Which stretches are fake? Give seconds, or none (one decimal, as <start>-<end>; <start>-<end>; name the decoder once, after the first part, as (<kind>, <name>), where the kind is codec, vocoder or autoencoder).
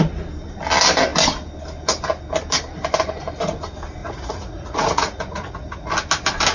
4.0-5.9 (vocoder, Vocos)